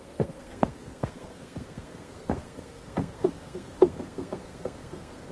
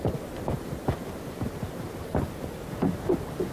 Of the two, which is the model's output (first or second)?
first